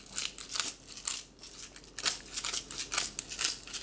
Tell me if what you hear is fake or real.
real